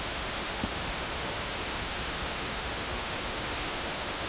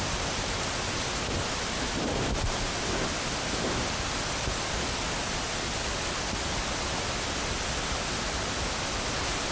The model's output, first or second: first